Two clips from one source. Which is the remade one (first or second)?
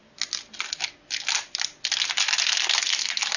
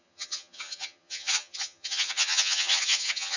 second